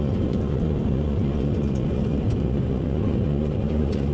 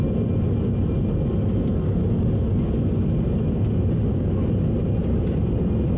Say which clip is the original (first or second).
second